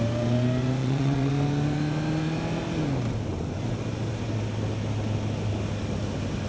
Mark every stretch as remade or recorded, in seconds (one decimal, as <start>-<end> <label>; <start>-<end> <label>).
0.0-0.8 recorded; 0.8-1.3 remade; 1.3-6.5 recorded